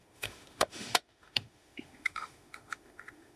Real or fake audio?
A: fake